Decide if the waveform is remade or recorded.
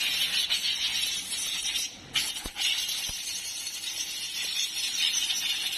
recorded